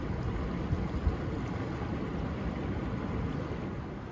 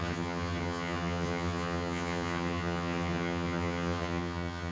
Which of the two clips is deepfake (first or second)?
second